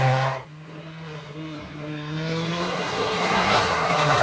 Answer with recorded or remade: remade